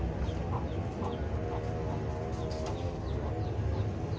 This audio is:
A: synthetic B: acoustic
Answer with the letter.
B